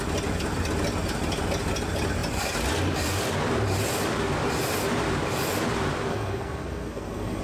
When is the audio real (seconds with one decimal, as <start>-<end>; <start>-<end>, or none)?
0.0-6.1